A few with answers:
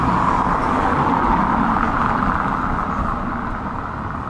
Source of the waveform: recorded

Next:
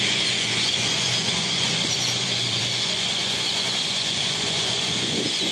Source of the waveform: remade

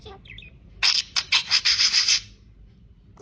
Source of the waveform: recorded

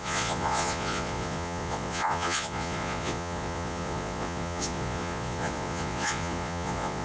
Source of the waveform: remade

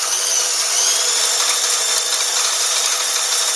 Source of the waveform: recorded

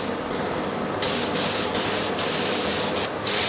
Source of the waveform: recorded